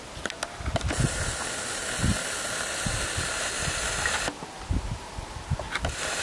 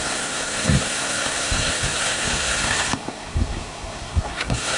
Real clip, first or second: first